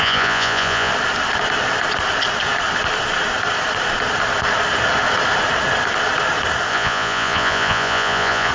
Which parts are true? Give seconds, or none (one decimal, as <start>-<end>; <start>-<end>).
0.9-6.7